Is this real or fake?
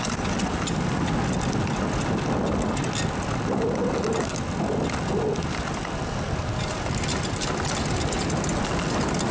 real